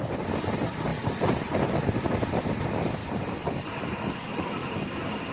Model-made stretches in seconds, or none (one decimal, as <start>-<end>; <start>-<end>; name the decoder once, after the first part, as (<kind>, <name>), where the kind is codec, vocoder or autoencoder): none